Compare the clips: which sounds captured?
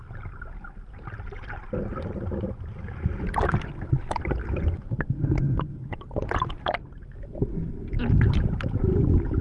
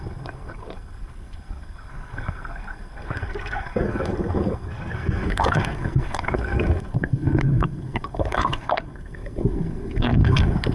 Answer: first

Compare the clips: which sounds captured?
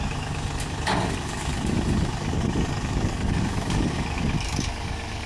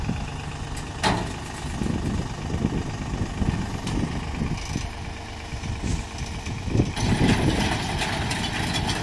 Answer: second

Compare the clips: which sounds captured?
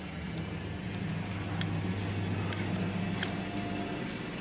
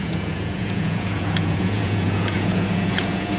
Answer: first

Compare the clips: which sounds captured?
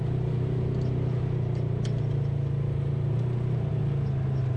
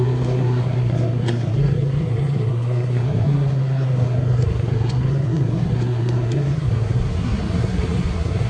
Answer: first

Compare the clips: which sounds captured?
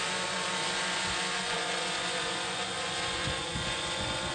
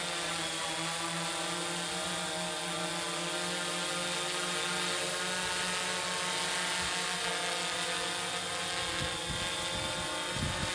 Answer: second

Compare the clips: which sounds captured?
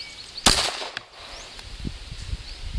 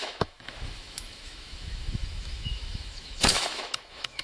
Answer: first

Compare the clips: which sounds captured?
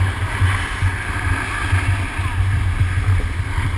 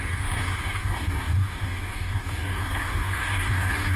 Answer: first